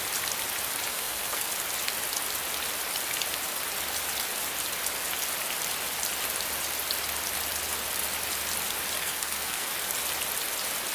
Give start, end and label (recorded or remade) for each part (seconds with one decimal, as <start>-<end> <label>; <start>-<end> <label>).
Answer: 0.0-0.9 recorded; 0.9-1.5 remade; 1.5-9.0 recorded; 9.0-9.7 remade; 9.7-10.9 recorded